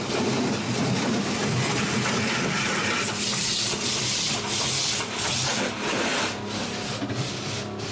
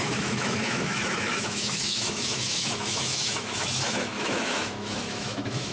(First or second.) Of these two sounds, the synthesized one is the second